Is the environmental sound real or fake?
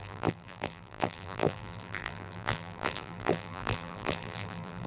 fake